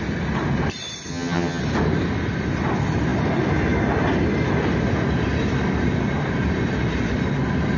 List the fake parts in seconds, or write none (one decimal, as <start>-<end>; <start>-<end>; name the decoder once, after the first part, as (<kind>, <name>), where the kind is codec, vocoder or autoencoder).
1.1-1.6 (vocoder, HiFi-GAN)